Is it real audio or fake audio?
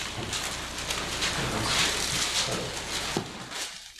real